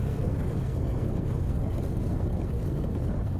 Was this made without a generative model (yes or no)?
no